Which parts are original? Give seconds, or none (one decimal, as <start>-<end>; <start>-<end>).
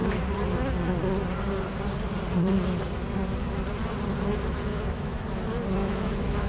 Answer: 0.0-4.7; 5.3-5.8